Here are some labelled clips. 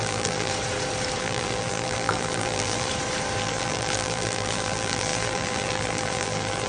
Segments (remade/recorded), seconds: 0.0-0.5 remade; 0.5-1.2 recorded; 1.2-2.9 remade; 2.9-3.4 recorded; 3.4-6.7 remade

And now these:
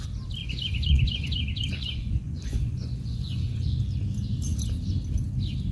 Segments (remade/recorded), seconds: 0.0-0.4 recorded; 0.4-3.8 remade; 3.8-5.7 recorded